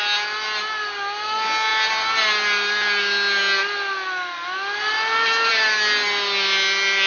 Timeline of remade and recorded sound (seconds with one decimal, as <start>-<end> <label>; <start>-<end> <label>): 0.0-7.1 recorded